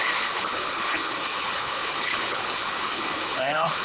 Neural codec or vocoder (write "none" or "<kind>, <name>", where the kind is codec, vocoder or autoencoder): codec, HILCodec